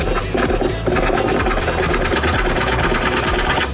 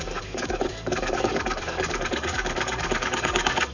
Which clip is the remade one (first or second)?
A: second